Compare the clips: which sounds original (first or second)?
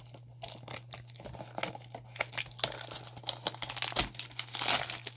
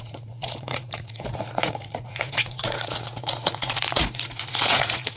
first